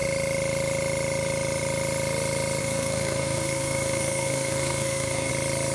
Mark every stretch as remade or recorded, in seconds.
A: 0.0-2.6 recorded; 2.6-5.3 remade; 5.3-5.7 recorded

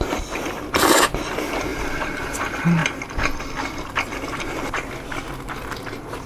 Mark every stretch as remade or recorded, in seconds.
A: 0.0-6.3 recorded

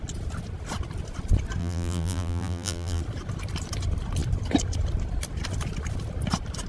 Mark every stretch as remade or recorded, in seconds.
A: 0.0-1.6 recorded; 1.6-3.0 remade; 3.0-6.7 recorded

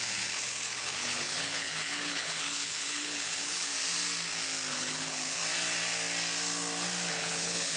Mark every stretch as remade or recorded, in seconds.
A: 0.0-3.7 remade; 3.7-4.7 recorded; 4.7-5.4 remade; 5.4-7.1 recorded; 7.1-7.8 remade